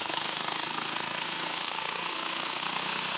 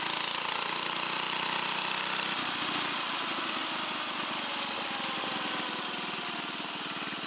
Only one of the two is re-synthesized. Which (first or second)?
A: first